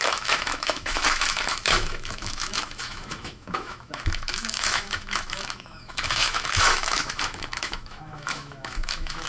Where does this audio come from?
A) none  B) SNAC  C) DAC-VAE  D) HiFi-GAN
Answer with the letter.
C